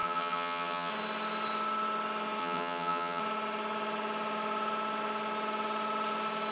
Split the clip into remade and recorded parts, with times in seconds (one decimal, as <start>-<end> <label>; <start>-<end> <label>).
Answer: 0.0-0.9 remade; 0.9-2.4 recorded; 2.4-3.2 remade; 3.2-6.5 recorded